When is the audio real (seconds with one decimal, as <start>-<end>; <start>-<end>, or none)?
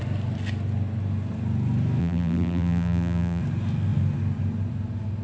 0.0-2.0; 3.4-5.2